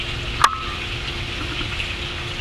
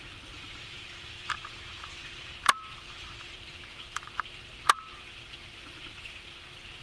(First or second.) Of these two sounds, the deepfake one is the second